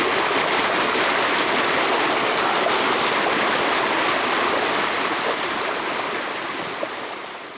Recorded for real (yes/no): yes